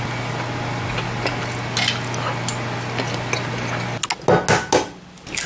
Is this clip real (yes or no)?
yes